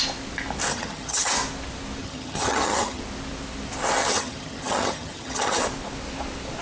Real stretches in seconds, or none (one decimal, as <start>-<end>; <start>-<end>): 0.0-0.7; 1.3-2.0; 3.0-4.0; 5.6-6.6